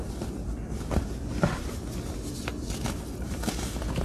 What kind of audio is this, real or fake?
real